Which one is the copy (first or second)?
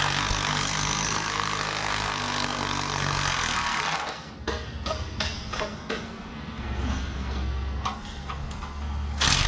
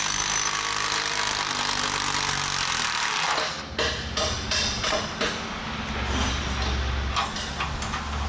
first